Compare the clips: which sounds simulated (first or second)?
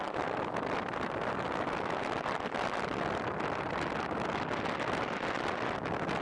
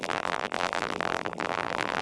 second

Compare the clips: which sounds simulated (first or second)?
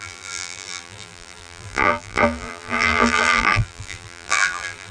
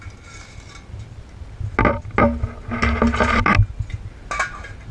first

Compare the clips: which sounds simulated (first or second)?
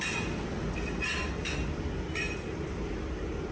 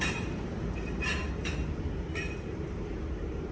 second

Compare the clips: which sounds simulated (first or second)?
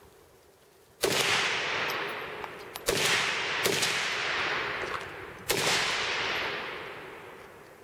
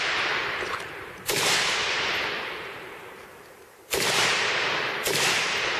second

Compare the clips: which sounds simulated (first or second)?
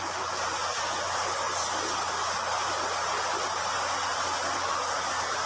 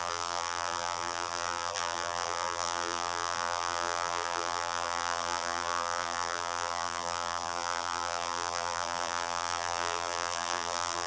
second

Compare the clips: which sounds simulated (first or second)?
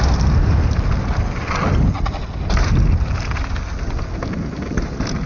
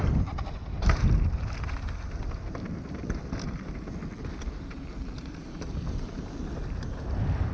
second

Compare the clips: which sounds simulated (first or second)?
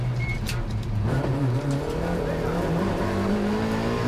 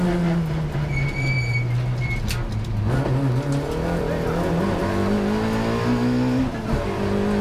first